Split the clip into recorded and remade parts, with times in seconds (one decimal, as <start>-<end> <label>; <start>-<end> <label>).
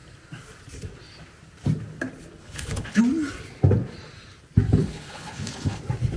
0.0-2.4 recorded; 2.4-3.0 remade; 3.0-4.8 recorded; 4.8-5.8 remade; 5.8-6.2 recorded